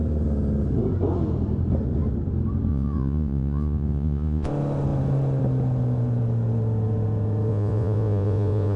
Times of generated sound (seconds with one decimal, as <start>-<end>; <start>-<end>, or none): 2.7-4.5; 7.5-8.8

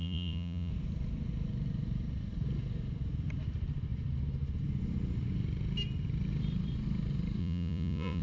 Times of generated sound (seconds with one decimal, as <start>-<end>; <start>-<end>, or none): 0.0-0.7; 7.4-8.2

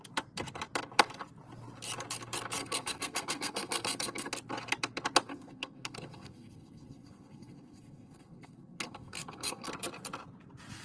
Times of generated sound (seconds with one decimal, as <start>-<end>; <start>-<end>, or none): 2.6-4.3; 5.3-9.7

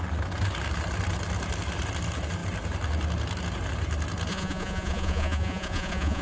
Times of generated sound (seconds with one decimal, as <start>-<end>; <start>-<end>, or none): 4.3-6.2